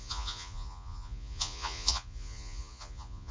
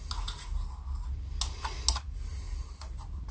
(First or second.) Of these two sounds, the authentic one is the second